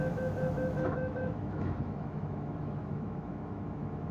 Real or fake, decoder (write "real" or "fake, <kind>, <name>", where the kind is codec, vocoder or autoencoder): fake, autoencoder, DAC-VAE